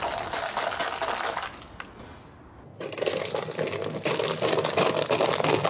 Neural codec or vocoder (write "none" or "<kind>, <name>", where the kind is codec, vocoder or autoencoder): none